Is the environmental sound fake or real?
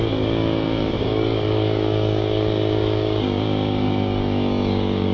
fake